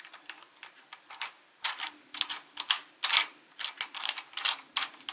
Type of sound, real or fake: real